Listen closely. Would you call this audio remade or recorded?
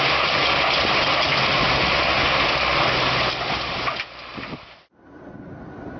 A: recorded